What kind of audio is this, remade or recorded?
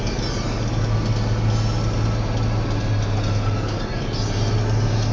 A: recorded